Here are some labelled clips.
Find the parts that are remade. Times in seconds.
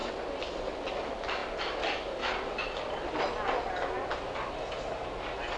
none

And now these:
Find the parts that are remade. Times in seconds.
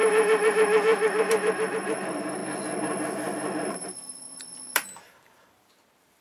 0.0-2.4; 3.7-6.2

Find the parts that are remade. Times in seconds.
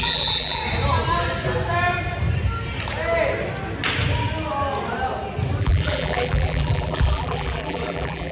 0.0-0.6; 5.6-8.3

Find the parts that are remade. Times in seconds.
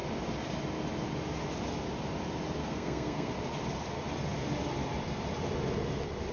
2.6-3.3